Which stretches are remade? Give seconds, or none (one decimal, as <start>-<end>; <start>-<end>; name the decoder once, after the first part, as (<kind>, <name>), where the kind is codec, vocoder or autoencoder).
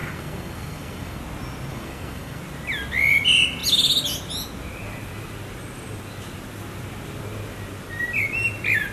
0.0-1.2 (codec, SNAC); 1.7-2.4